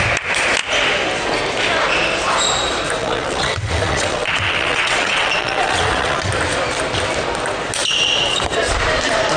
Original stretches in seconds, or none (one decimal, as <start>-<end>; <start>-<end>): 0.0-3.0; 6.3-9.4